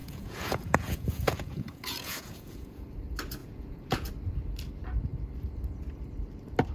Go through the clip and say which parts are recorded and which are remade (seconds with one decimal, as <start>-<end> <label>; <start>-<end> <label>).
0.0-2.8 remade; 2.8-3.4 recorded; 3.4-4.1 remade; 4.1-6.7 recorded